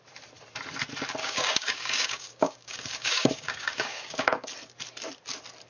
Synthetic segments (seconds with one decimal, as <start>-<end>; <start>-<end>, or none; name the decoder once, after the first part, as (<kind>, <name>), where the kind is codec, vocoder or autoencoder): 1.2-4.5 (codec, DAC)